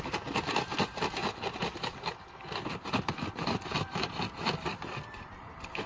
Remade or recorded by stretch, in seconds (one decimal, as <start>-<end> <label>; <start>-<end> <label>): 0.0-1.2 remade; 1.2-2.9 recorded; 2.9-5.9 remade